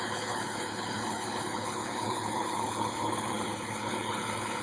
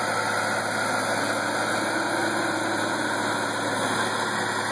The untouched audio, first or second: second